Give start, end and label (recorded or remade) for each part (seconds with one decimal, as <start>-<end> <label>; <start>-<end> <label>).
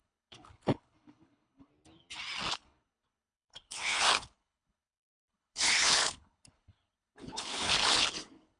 0.0-1.7 remade; 1.7-2.5 recorded; 2.5-8.6 remade